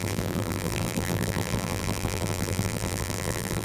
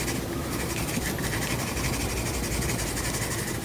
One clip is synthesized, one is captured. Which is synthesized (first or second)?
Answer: first